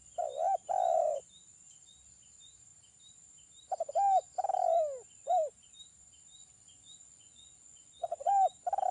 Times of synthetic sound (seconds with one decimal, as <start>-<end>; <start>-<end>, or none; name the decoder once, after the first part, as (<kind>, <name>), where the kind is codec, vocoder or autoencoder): 6.4-8.3 (vocoder, Vocos)